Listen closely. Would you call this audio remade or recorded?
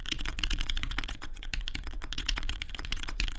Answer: remade